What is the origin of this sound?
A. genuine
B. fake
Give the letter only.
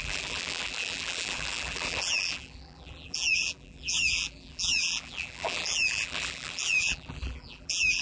B